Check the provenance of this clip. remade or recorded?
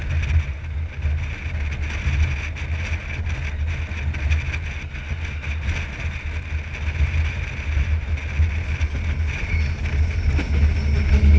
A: recorded